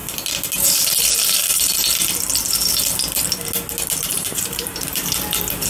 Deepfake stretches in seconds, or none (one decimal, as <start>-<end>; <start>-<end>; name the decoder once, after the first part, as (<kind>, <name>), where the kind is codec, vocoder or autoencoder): 4.1-5.0 (vocoder, BigVGAN v2)